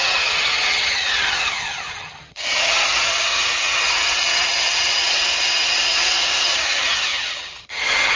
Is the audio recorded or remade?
remade